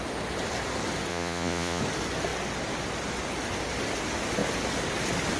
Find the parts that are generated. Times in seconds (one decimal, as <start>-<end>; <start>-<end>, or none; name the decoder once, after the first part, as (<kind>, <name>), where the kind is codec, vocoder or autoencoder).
1.1-1.8 (vocoder, Vocos)